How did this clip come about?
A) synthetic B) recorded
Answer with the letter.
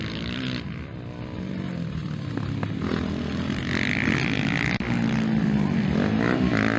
B